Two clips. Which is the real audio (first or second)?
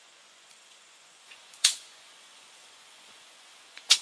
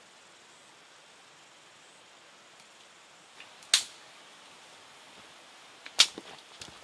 second